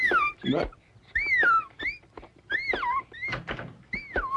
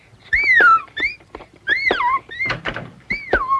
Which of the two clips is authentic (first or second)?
first